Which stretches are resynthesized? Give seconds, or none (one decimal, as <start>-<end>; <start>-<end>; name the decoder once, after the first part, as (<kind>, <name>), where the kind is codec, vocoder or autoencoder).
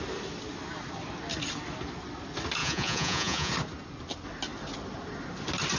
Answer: 2.6-3.5 (vocoder, Vocos)